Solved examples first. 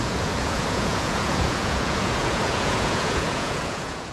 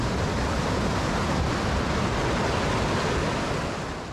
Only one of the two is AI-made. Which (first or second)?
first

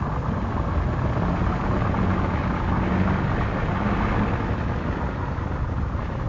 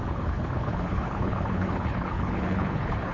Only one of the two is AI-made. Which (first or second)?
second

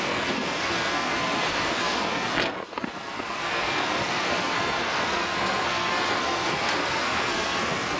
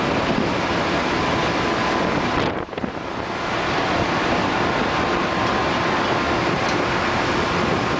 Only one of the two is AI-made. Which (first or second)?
first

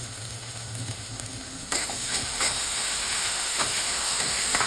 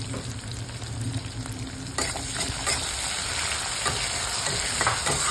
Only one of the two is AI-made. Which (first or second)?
first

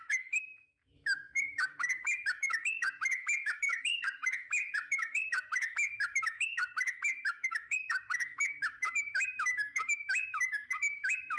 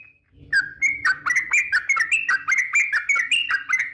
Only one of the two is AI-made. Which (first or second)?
first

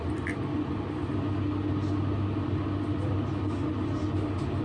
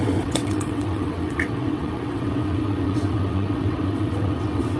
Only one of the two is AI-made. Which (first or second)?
second